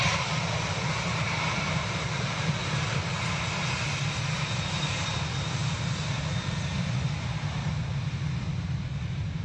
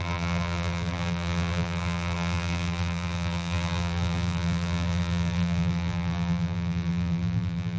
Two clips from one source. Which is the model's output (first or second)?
second